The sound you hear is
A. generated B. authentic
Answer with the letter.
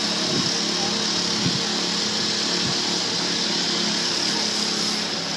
B